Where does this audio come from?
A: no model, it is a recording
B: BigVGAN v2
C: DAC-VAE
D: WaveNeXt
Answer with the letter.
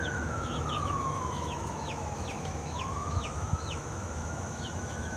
C